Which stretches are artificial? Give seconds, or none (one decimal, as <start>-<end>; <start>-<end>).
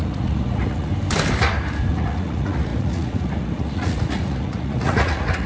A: 0.0-0.9; 1.9-5.5